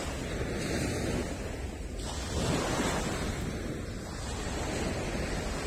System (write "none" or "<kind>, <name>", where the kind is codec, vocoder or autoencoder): none